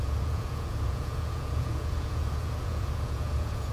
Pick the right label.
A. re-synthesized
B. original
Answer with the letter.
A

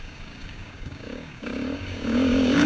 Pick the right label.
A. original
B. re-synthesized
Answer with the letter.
B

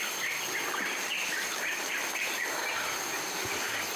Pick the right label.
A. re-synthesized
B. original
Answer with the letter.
B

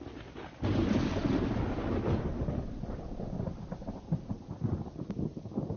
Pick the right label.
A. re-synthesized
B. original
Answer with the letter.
B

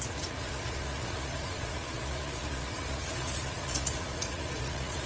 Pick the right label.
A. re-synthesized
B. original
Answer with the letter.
A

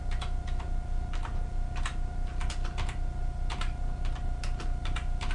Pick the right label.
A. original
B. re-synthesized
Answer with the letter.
A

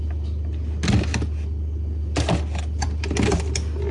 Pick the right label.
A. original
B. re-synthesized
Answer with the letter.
A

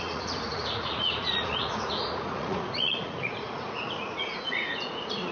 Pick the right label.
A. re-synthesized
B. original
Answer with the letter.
A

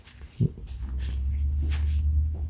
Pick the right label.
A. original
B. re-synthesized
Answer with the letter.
A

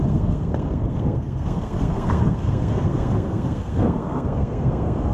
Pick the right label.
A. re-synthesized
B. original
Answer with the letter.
A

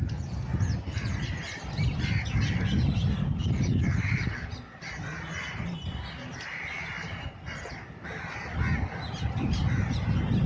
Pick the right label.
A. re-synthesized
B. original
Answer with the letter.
B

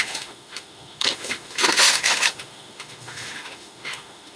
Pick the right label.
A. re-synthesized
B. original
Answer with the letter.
A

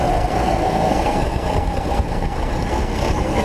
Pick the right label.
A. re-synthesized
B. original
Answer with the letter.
A